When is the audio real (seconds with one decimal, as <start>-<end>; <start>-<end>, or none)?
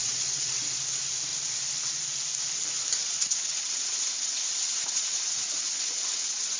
0.6-3.0